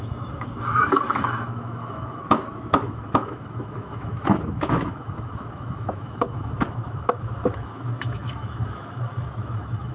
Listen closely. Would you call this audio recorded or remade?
remade